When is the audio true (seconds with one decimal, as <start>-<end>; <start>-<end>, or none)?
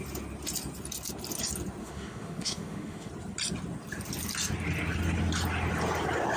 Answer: 0.0-1.8; 3.1-6.4